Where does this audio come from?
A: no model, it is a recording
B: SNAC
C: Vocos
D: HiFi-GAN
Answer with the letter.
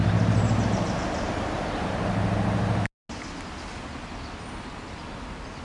A